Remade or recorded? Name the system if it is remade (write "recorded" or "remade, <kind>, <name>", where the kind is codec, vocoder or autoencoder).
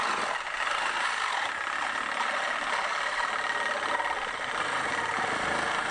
recorded